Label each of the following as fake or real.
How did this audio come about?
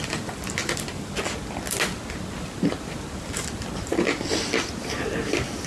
real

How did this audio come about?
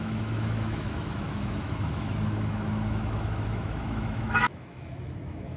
fake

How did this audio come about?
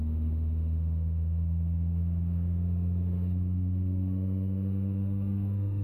fake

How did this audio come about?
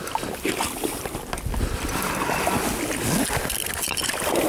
real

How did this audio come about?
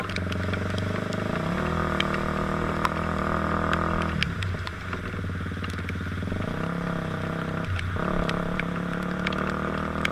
real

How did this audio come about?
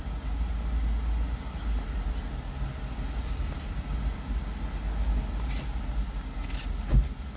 real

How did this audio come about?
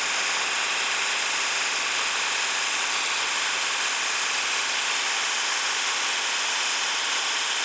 real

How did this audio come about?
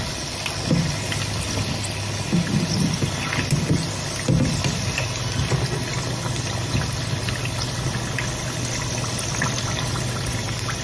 real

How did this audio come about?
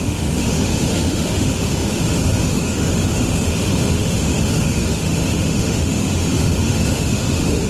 fake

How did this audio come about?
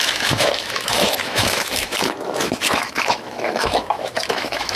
fake